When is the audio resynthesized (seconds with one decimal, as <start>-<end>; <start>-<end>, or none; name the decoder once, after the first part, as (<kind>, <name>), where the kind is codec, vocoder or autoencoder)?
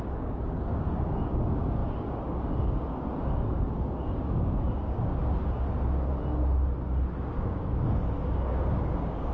0.0-5.1 (codec, DAC); 7.2-9.3